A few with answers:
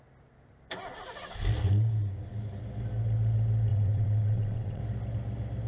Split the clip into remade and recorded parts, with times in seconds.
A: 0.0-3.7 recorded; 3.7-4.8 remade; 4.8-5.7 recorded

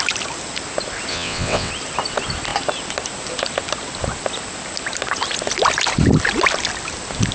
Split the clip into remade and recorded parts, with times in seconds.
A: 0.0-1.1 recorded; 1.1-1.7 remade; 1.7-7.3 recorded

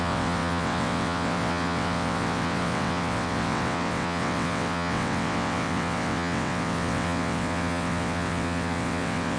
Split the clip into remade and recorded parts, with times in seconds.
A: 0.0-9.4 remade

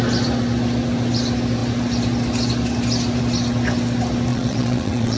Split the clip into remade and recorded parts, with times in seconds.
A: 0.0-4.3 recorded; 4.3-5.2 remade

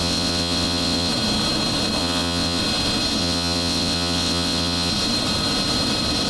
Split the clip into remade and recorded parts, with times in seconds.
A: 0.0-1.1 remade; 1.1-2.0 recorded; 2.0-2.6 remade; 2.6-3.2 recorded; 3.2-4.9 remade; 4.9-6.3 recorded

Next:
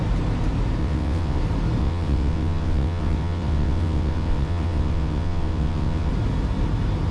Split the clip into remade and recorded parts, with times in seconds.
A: 0.0-0.8 recorded; 0.8-1.4 remade; 1.4-1.8 recorded; 1.8-6.1 remade; 6.1-7.1 recorded

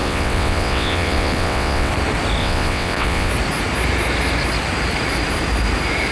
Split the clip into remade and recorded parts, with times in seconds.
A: 0.0-1.9 remade; 1.9-2.4 recorded; 2.4-3.3 remade; 3.3-6.1 recorded

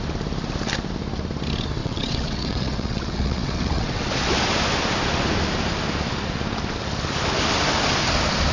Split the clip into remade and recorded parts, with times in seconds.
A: 0.0-1.8 recorded; 1.8-4.1 remade; 4.1-8.5 recorded